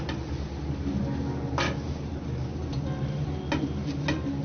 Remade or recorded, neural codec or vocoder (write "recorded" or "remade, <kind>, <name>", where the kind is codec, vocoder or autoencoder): recorded